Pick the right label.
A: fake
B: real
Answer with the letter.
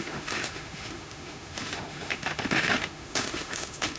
A